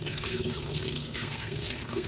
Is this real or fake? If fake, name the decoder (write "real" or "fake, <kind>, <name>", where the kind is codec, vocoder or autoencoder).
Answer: fake, codec, SNAC